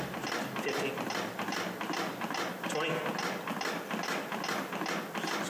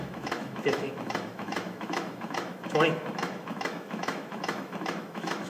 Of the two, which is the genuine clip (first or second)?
first